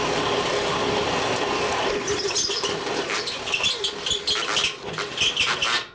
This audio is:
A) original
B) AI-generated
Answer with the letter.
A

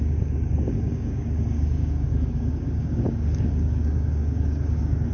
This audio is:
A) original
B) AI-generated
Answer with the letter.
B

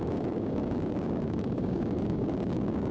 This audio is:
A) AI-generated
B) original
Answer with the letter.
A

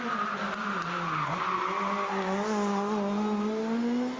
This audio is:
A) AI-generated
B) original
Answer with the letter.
B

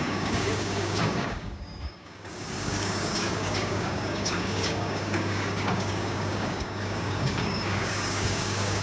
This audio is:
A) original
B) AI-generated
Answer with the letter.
B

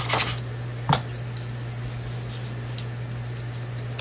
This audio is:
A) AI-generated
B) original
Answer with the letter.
B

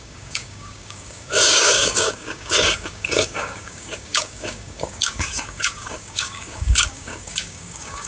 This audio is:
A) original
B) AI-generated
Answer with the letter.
B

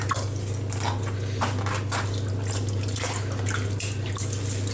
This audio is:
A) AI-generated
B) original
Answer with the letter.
B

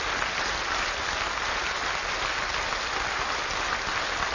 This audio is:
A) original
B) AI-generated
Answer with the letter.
A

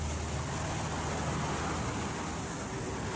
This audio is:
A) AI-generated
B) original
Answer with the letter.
B